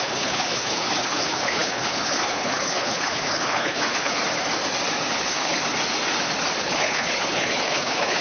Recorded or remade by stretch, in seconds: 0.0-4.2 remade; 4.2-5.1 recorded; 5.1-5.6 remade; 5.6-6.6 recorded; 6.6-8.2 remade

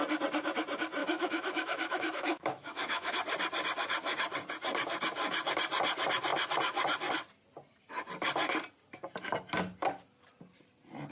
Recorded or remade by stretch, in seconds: 0.0-1.0 recorded; 1.0-3.1 remade; 3.1-11.1 recorded

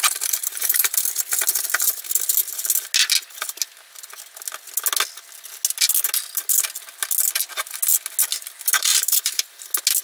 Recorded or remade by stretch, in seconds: 0.0-0.4 recorded; 0.4-0.9 remade; 0.9-8.9 recorded; 8.9-9.6 remade; 9.6-10.0 recorded

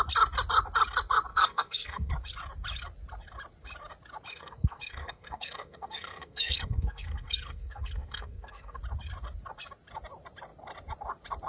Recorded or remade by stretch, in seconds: 0.0-1.3 recorded; 1.3-2.1 remade; 2.1-4.3 recorded; 4.3-8.8 remade; 8.8-11.5 recorded

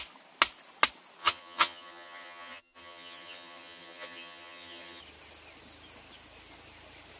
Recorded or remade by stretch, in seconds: 0.0-1.2 recorded; 1.2-5.0 remade; 5.0-7.2 recorded

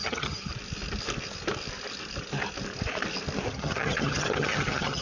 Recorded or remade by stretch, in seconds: 0.0-0.5 remade; 0.5-3.5 recorded; 3.5-5.0 remade

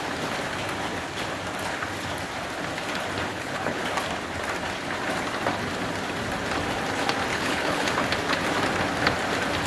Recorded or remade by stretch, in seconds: 0.0-3.3 recorded; 3.3-3.8 remade; 3.8-7.3 recorded; 7.3-7.9 remade; 7.9-9.7 recorded